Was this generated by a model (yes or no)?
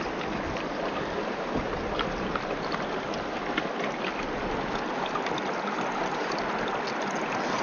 no